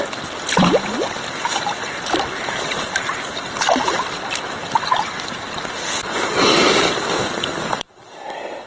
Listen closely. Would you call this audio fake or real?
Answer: real